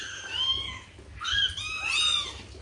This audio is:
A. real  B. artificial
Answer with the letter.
A